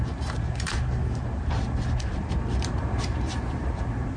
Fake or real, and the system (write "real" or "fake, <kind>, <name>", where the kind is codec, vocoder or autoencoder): fake, vocoder, BigVGAN v2